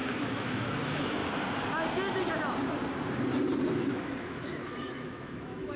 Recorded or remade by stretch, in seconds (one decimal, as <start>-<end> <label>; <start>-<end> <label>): 0.0-1.2 remade; 1.2-3.7 recorded; 3.7-5.8 remade